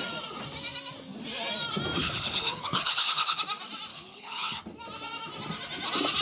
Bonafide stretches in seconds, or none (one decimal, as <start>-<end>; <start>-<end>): 0.0-2.0; 3.4-3.9; 4.6-6.2